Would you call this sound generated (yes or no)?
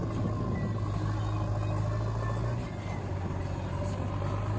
no